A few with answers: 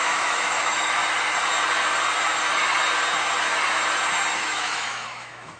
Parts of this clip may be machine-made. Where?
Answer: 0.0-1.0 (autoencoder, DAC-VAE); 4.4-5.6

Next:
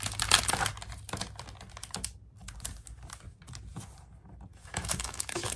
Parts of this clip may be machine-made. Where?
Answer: 4.6-5.6 (autoencoder, DAC-VAE)

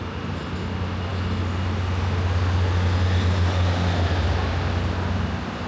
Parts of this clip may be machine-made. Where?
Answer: none